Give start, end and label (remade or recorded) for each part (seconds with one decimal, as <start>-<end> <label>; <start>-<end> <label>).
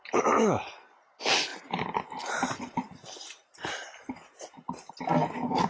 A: 0.0-5.7 recorded